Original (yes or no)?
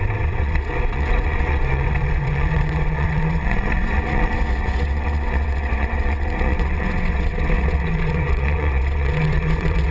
no